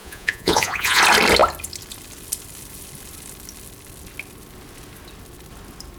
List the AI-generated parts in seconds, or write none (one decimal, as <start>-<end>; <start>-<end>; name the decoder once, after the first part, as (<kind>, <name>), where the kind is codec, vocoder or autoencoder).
0.0-1.0 (vocoder, Vocos)